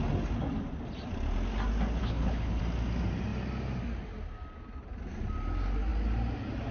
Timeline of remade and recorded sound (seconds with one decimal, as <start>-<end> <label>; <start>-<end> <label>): 0.0-2.0 recorded; 2.0-2.6 remade; 2.6-6.7 recorded